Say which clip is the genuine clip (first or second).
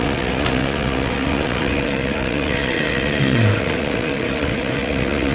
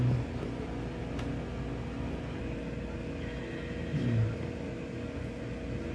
second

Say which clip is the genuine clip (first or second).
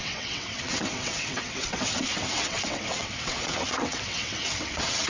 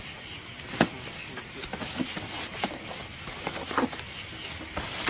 second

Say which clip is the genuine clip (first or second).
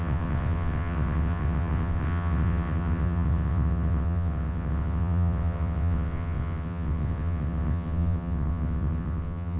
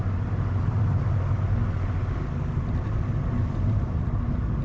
second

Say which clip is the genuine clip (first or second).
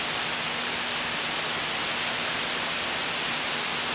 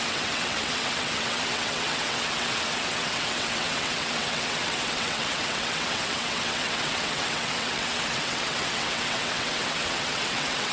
first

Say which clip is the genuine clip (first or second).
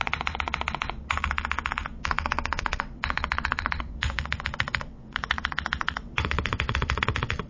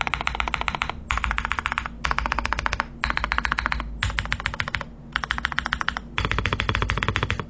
second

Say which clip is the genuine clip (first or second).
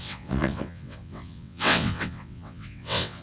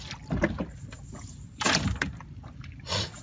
second